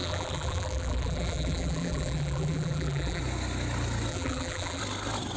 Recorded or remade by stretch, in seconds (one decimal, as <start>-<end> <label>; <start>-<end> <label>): 0.0-3.2 remade; 3.2-4.1 recorded; 4.1-4.8 remade; 4.8-5.4 recorded